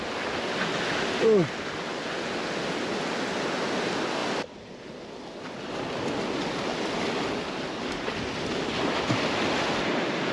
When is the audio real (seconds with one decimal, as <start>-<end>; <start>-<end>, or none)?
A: 0.0-10.3